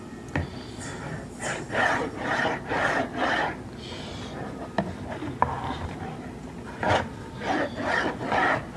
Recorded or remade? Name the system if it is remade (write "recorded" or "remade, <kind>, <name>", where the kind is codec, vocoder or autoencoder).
remade, vocoder, BigVGAN v2